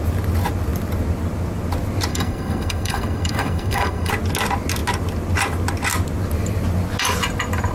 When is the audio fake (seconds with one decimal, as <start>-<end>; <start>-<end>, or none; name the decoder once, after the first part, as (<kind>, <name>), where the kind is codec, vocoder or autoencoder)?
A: 2.1-4.1 (codec, SNAC)